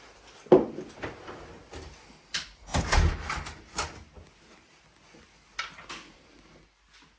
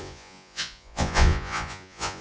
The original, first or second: first